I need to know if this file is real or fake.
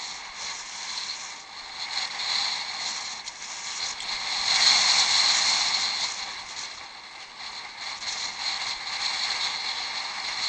real